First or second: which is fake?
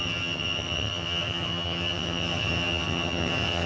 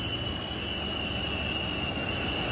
first